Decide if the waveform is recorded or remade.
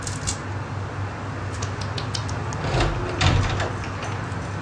recorded